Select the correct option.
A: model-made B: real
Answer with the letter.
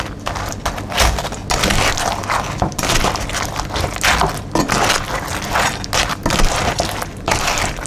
B